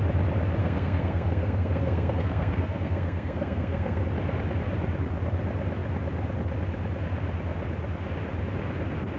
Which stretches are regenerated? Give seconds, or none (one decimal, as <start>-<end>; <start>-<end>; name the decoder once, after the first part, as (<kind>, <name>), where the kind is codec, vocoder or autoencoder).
0.6-4.0 (codec, SNAC)